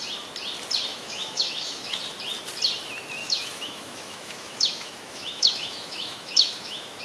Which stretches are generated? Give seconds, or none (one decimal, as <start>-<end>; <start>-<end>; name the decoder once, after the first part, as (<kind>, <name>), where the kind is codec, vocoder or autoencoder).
0.9-2.0 (autoencoder, DAC-VAE); 3.2-7.0

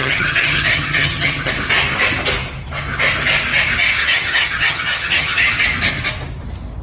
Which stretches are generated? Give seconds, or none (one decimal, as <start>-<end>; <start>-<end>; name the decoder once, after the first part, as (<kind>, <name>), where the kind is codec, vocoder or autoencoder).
0.0-1.5 (vocoder, HiFi-GAN); 4.0-5.5

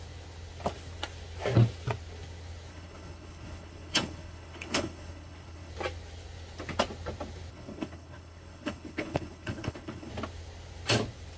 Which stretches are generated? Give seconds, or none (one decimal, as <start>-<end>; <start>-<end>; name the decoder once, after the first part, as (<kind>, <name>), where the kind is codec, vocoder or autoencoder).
2.7-5.7 (codec, HILCodec); 7.5-10.1

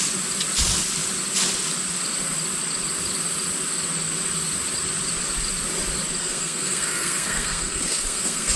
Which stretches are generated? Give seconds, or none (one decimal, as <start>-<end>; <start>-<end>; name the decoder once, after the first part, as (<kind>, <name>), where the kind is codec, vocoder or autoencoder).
6.2-8.6 (codec, SNAC)